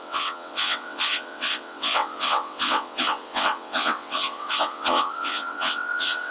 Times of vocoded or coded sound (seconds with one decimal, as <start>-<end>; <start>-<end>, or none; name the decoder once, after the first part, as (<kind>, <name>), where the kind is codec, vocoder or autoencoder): 0.0-6.3 (vocoder, WaveNeXt)

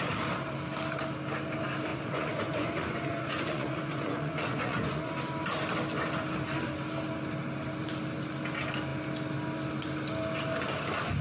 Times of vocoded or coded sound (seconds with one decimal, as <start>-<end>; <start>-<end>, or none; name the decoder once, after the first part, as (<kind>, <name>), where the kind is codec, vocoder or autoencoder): 1.9-5.1 (vocoder, Vocos)